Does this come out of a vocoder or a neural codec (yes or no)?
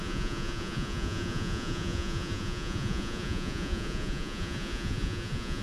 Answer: yes